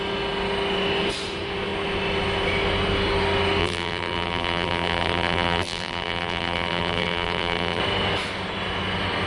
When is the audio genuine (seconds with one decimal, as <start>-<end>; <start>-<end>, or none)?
0.0-3.6; 7.8-9.3